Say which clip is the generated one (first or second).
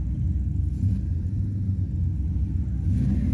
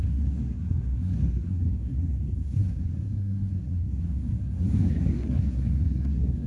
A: second